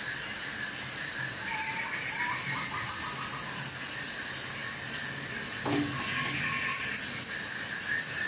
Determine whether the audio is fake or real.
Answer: real